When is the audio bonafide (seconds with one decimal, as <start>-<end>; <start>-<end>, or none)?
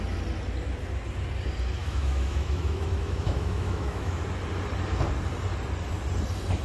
0.0-1.8; 4.2-6.6